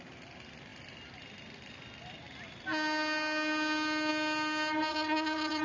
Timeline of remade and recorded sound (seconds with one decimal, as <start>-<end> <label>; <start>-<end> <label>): 0.0-4.9 recorded; 4.9-5.6 remade